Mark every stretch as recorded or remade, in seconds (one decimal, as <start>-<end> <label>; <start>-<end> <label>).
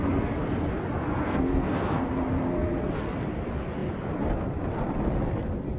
0.0-1.2 recorded; 1.2-2.1 remade; 2.1-5.8 recorded